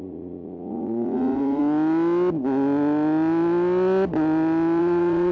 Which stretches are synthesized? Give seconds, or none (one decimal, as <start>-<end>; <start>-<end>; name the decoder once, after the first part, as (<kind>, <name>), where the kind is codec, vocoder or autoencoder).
0.0-1.6 (vocoder, Vocos); 4.8-5.3